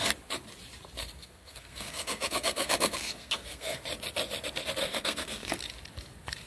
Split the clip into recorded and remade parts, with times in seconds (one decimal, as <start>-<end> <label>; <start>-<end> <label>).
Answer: 0.0-1.2 recorded; 1.2-3.8 remade; 3.8-4.8 recorded; 4.8-5.6 remade; 5.6-6.5 recorded